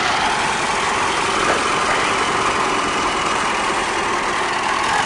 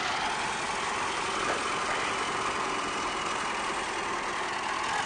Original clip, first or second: second